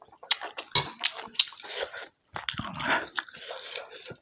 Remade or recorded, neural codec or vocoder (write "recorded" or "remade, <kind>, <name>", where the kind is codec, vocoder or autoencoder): recorded